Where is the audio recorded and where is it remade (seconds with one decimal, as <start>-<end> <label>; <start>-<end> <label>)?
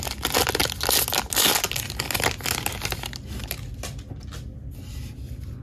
0.0-5.6 recorded